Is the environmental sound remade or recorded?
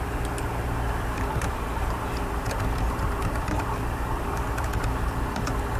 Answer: remade